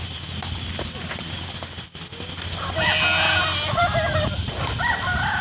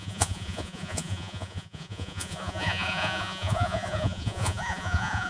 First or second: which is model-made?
second